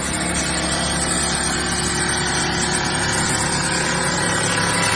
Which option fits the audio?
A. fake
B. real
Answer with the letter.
B